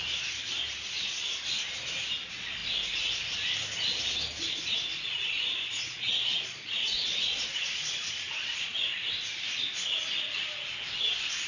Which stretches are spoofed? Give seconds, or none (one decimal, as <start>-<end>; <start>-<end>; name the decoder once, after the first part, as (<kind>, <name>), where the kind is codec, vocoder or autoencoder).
4.9-9.1 (vocoder, Vocos)